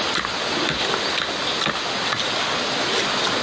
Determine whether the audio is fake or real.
real